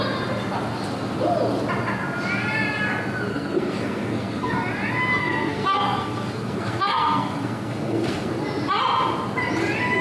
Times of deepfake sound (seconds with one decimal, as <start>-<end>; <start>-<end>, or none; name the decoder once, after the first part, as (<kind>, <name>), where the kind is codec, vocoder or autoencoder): 3.3-4.5 (codec, SNAC); 5.2-8.3